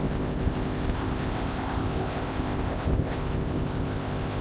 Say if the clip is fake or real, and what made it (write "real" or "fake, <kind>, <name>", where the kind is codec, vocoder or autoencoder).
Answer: fake, codec, ZipCodec